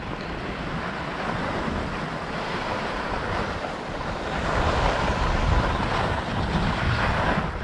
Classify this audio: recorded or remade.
recorded